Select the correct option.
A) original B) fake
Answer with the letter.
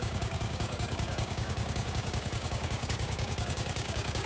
B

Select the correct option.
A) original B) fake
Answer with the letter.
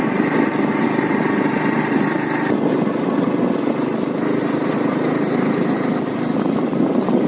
A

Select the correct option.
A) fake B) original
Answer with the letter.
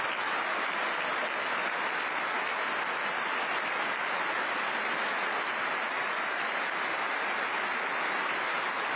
B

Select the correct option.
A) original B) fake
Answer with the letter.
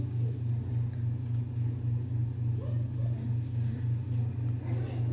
A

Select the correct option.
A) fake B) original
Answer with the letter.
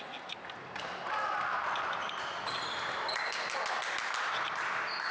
B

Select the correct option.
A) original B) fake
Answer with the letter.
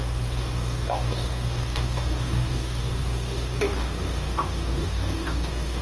B